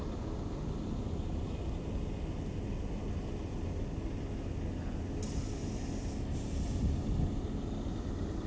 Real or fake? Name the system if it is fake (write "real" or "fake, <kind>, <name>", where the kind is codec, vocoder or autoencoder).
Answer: real